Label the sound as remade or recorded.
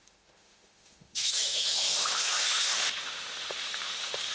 remade